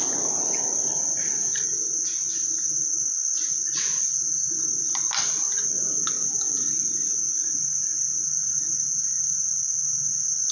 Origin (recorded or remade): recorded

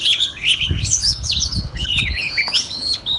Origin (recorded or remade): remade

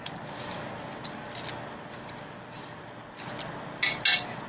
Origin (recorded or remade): recorded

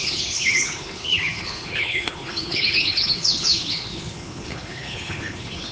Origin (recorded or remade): remade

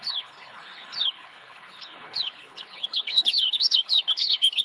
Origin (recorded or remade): remade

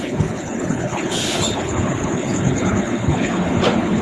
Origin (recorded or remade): remade